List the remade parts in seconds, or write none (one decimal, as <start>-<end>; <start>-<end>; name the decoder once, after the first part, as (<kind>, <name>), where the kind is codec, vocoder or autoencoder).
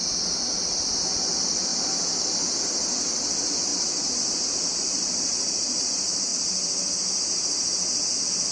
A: 0.0-1.7 (vocoder, BigVGAN v2); 3.3-3.7; 4.5-6.3